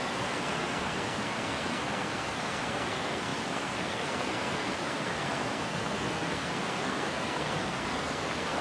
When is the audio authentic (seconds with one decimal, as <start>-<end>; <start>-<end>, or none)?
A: none